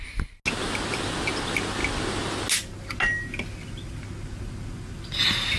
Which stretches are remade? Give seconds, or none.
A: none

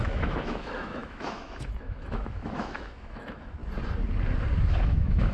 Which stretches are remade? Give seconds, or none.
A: 0.0-3.6; 4.8-5.3

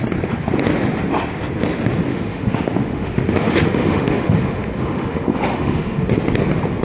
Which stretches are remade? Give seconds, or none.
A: 2.1-6.1